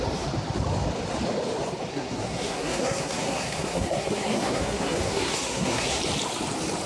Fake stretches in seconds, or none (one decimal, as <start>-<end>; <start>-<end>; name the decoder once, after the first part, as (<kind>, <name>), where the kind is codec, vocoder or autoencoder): 1.9-6.0 (codec, SNAC)